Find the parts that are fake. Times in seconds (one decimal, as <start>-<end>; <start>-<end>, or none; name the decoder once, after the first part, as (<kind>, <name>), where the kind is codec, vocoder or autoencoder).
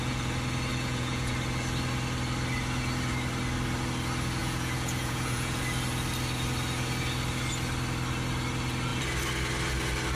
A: 0.7-1.3 (vocoder, Vocos); 4.4-5.6